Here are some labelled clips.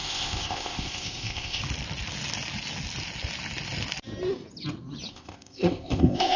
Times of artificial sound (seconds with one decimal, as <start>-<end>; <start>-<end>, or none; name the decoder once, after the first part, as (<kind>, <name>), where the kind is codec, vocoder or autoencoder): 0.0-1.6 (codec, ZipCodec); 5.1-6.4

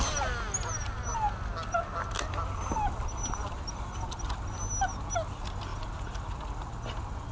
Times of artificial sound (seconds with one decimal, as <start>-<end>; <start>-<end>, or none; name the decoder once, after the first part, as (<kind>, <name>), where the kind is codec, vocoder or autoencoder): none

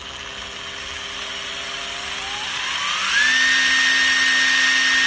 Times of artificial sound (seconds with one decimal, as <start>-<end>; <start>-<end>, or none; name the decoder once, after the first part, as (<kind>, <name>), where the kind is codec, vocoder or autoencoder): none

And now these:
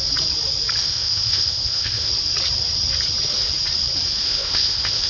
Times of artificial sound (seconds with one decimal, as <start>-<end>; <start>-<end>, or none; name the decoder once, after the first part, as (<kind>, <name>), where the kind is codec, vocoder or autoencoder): 0.8-2.1 (codec, ZipCodec); 4.2-5.1

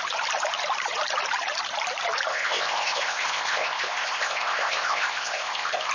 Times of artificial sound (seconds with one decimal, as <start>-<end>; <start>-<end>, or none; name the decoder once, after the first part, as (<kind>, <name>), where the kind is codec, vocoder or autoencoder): 2.3-5.9 (codec, ZipCodec)

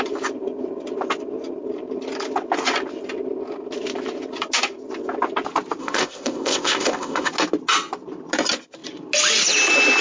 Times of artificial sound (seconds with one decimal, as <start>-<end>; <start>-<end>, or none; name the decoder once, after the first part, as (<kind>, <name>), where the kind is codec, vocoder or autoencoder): 5.8-7.3 (codec, ZipCodec)

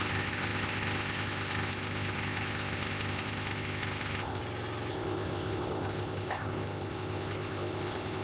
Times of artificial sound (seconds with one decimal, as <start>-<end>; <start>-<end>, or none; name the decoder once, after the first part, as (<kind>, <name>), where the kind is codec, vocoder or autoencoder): 0.0-4.4 (codec, ZipCodec); 4.9-8.2

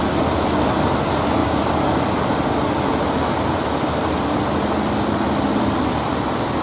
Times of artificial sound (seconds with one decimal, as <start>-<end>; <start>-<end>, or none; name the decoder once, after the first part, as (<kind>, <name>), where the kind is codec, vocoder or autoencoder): none